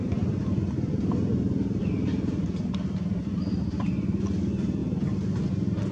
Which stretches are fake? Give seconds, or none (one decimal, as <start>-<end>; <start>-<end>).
0.4-1.2; 2.1-4.2